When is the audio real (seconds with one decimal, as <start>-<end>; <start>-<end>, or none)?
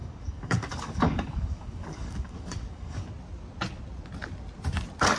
3.1-5.2